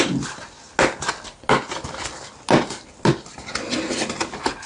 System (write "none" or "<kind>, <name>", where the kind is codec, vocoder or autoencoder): none